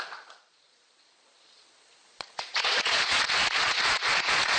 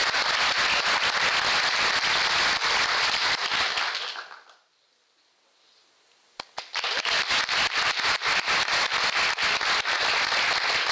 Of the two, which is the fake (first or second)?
first